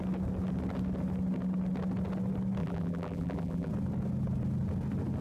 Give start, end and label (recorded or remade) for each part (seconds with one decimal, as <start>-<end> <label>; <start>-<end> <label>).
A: 0.0-2.6 recorded; 2.6-3.7 remade; 3.7-5.2 recorded